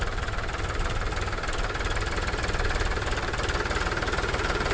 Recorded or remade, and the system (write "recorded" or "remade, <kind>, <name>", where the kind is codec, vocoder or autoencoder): recorded